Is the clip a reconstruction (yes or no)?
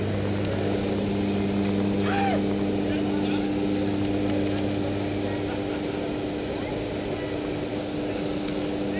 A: no